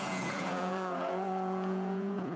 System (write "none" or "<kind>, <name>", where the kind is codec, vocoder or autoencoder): vocoder, Vocos